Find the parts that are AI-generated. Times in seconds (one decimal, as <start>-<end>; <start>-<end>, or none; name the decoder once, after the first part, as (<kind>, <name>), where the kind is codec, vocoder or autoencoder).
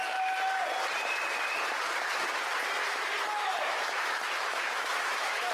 2.8-5.5 (autoencoder, DAC-VAE)